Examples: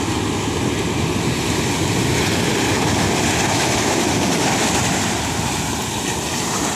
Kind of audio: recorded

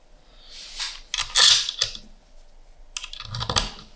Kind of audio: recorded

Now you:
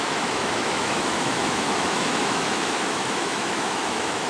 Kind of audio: remade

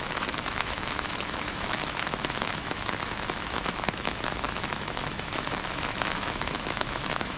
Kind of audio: remade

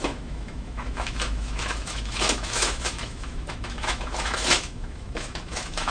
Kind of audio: remade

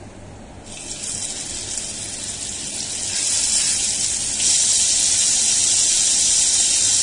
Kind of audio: recorded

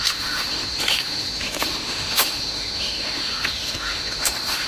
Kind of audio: remade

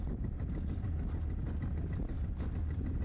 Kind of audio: recorded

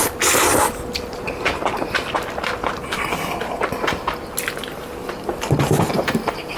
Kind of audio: recorded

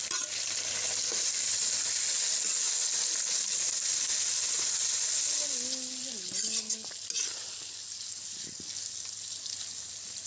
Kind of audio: recorded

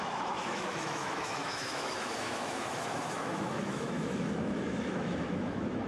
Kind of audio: remade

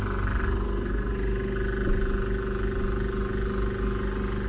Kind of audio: recorded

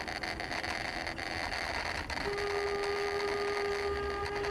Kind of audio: recorded